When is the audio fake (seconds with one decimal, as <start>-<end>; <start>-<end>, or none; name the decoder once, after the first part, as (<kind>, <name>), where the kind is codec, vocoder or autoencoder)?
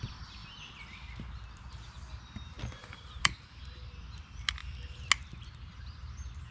2.8-3.8 (vocoder, BigVGAN v2); 4.6-5.1